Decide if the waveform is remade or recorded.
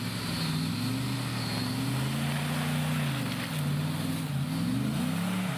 recorded